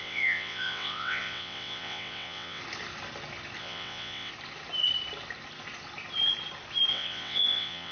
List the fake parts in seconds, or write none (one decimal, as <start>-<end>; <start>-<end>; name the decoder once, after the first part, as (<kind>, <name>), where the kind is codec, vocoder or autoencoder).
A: 0.0-2.6 (vocoder, WaveNeXt); 3.6-4.3; 6.9-7.9